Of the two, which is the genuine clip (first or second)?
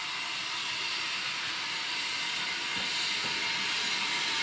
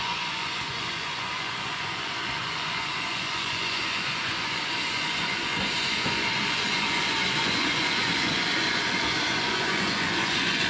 first